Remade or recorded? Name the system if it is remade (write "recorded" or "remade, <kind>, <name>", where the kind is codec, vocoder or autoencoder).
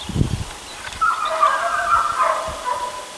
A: recorded